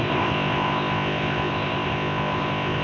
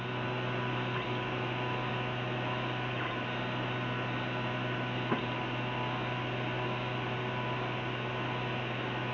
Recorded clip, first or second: second